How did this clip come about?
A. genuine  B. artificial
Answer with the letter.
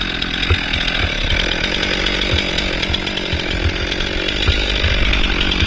A